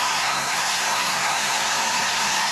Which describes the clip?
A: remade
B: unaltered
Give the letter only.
A